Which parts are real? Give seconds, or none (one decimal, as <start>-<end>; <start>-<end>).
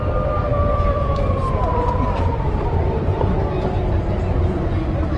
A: 0.0-0.5; 3.2-5.2